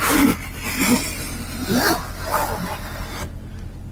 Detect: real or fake real